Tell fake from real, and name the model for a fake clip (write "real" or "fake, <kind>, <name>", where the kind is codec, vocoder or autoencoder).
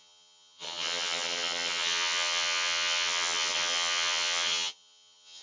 fake, vocoder, HiFi-GAN